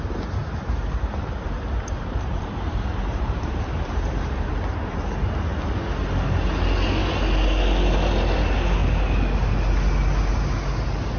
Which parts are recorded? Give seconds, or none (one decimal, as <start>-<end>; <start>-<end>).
0.0-0.4; 4.5-11.2